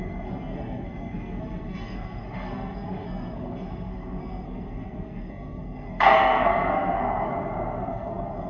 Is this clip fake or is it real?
fake